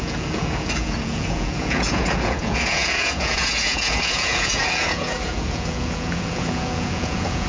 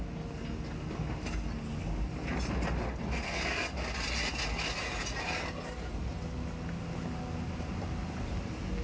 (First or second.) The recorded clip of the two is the second